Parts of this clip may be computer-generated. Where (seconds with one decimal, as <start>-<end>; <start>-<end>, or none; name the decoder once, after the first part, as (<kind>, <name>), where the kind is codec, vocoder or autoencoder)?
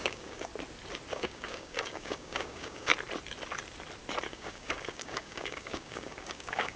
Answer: 0.0-0.5 (codec, DAC); 1.1-2.9; 4.3-6.8